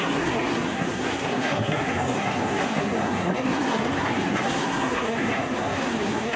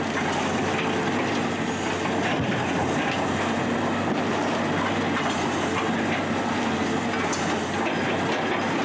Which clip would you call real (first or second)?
second